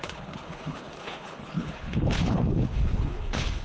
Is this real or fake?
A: fake